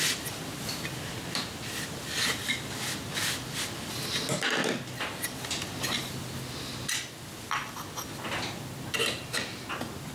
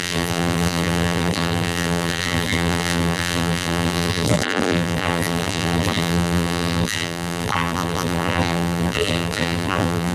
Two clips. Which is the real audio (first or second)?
first